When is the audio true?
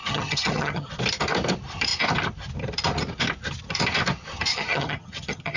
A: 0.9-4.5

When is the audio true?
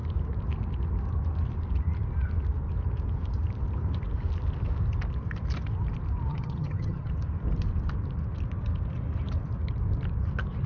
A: 0.0-6.3; 7.1-10.7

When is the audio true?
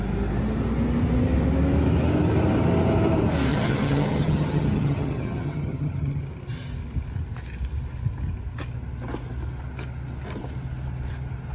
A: 0.0-3.5; 6.2-11.5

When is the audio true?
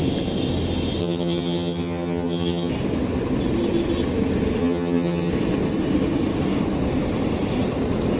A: 0.0-1.0; 2.7-4.6; 5.3-8.2